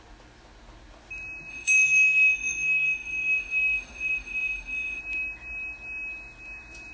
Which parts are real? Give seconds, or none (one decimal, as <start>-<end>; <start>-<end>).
0.0-1.5; 5.0-6.9